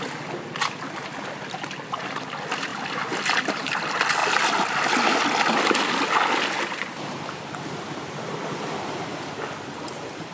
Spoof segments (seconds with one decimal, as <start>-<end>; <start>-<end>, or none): 2.7-3.5